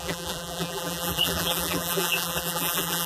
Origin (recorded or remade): remade